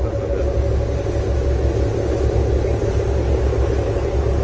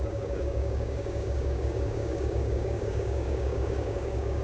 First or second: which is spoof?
second